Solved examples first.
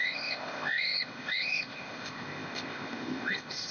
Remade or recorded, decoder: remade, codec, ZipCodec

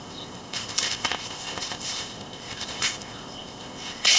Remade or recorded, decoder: remade, codec, ZipCodec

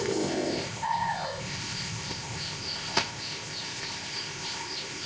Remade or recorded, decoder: remade, codec, ZipCodec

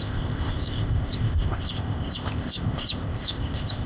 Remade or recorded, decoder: remade, codec, ZipCodec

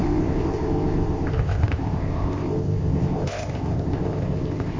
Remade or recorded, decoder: remade, codec, ZipCodec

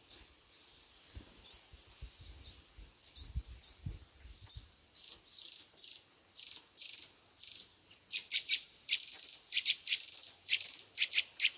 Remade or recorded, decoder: recorded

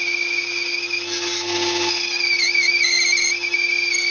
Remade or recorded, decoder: recorded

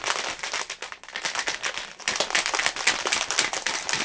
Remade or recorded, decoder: recorded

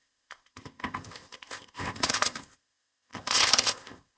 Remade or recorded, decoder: remade, codec, ZipCodec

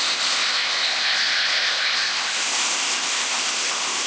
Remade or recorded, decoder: remade, codec, ZipCodec